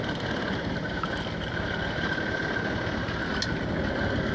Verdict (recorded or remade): recorded